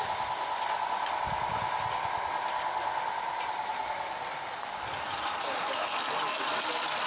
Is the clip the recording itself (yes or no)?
yes